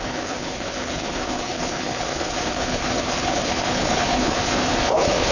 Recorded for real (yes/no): no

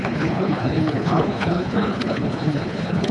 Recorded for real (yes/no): no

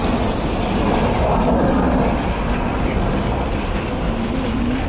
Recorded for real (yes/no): yes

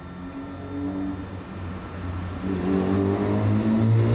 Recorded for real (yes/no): yes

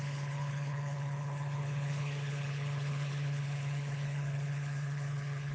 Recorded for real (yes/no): no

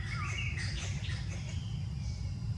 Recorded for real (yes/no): yes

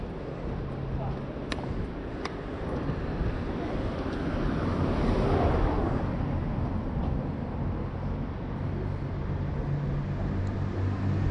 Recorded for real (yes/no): yes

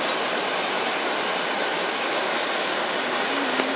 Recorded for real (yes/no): yes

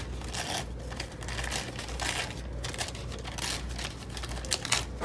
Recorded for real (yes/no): yes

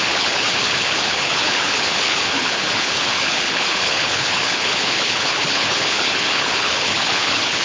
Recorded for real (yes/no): no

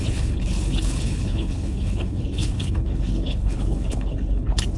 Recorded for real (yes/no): no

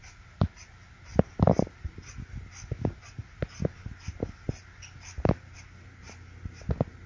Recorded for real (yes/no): yes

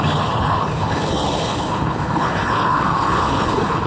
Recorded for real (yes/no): no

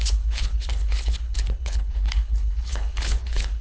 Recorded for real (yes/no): no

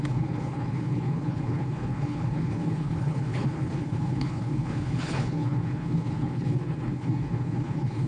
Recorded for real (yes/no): no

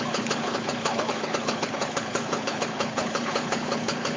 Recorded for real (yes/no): no